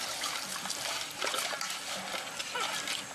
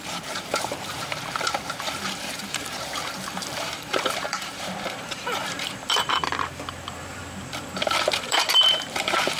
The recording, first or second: first